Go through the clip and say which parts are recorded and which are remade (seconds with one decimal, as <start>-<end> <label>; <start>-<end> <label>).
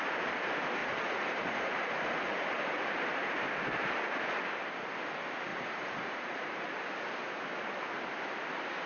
0.0-0.8 recorded; 0.8-2.8 remade; 2.8-5.5 recorded; 5.5-6.7 remade; 6.7-8.9 recorded